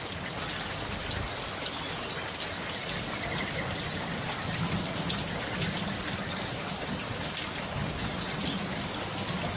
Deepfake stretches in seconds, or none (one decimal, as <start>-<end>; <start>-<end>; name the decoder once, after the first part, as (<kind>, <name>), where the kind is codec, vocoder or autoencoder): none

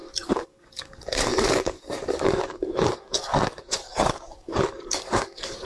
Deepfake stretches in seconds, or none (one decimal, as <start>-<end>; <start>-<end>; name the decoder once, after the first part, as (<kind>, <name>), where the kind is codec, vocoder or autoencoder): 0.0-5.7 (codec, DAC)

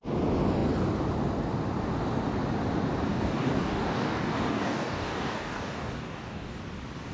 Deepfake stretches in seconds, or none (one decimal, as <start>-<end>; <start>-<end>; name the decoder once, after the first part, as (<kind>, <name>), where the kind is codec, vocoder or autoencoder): 3.1-6.6 (codec, DAC)

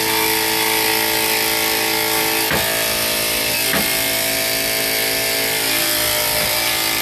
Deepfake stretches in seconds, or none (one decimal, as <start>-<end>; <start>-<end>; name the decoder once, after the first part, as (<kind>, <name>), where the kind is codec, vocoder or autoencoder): none

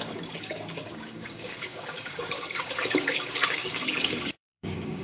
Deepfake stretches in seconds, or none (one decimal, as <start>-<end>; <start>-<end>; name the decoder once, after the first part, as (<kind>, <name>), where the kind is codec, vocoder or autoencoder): 0.0-5.0 (codec, DAC)

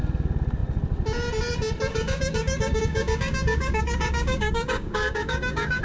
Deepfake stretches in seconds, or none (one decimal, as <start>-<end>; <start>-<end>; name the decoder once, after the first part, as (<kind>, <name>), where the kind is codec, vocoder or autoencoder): 1.9-5.8 (codec, DAC)

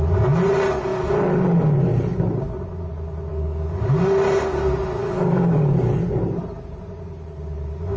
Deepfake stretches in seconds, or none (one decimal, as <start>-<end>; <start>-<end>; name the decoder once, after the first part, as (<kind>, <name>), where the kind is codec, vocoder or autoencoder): 3.3-3.9 (codec, DAC); 5.0-6.0